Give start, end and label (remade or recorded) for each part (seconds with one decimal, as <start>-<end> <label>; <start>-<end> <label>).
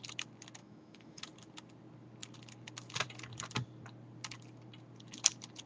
0.0-0.6 recorded; 0.6-1.2 remade; 1.2-5.7 recorded